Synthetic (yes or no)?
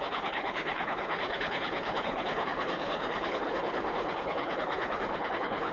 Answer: yes